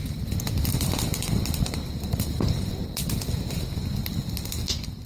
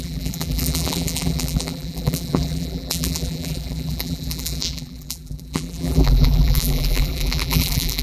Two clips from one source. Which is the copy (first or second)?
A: second